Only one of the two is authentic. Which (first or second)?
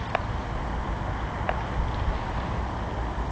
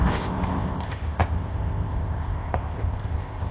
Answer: first